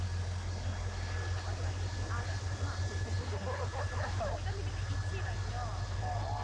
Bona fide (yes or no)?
yes